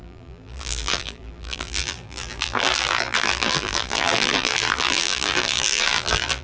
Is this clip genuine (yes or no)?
no